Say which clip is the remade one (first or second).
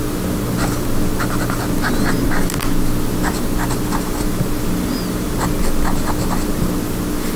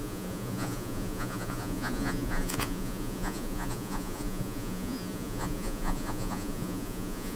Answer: second